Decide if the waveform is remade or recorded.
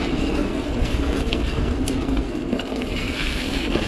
remade